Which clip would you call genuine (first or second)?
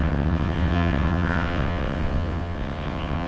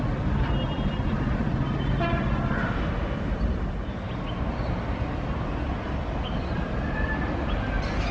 second